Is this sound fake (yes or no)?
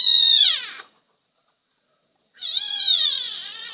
yes